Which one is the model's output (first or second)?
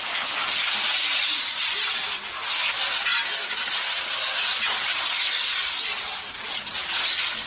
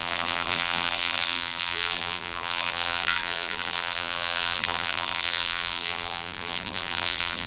second